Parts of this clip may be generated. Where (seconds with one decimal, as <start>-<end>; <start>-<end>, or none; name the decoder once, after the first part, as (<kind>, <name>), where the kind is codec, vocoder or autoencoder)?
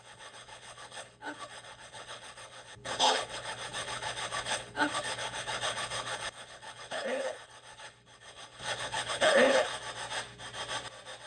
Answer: 0.0-9.7 (codec, HILCodec)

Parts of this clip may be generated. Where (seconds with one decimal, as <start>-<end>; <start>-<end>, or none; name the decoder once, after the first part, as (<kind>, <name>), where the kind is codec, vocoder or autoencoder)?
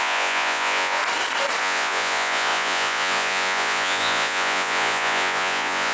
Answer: 0.0-1.0 (vocoder, Vocos); 1.6-5.9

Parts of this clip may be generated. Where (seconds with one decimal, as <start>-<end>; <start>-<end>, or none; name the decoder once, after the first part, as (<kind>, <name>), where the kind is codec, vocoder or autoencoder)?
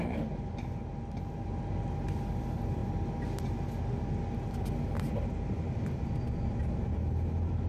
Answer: none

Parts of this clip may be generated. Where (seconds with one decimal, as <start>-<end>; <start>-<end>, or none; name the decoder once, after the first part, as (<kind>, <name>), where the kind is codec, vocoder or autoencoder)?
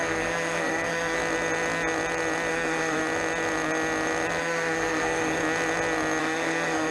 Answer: 0.0-1.2 (codec, SNAC); 2.5-3.0; 4.4-5.4; 6.2-6.9